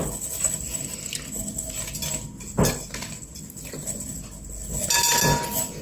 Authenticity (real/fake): real